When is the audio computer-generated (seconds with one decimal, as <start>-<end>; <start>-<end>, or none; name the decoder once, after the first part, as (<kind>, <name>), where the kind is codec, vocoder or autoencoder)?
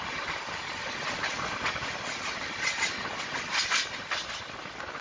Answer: none